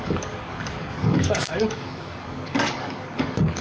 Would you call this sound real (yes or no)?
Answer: no